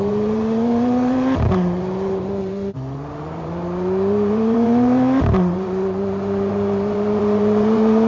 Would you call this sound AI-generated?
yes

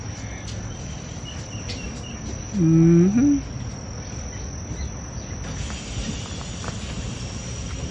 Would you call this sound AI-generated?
no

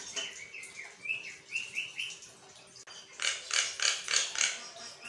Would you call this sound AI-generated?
no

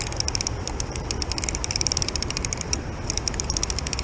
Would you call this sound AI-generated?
yes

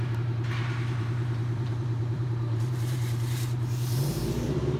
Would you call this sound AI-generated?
yes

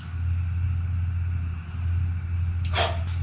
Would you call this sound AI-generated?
no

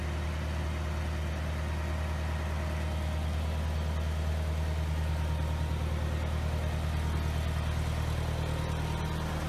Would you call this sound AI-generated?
no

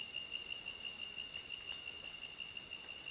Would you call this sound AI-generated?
no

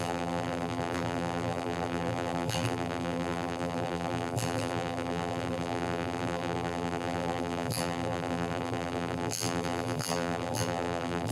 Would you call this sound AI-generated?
yes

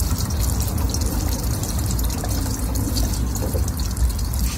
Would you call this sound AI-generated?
no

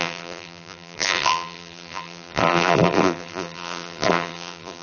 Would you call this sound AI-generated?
yes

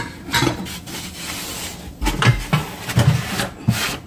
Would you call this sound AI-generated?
no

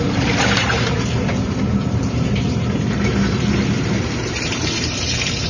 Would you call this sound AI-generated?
yes